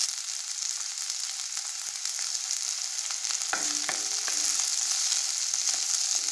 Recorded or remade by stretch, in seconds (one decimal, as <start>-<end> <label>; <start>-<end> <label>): 0.0-6.3 recorded